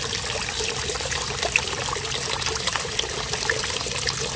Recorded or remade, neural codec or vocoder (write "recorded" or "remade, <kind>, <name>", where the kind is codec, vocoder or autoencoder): recorded